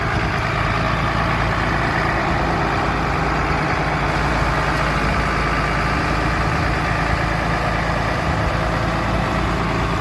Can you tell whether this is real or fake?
real